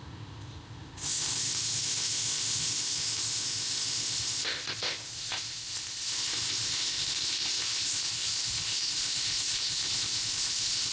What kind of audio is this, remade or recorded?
remade